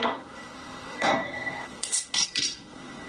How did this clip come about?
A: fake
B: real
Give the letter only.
A